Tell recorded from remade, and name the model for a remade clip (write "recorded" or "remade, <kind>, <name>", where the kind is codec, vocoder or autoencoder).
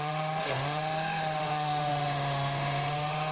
remade, autoencoder, DAC-VAE